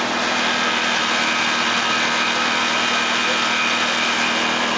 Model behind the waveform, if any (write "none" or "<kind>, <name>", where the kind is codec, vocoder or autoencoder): none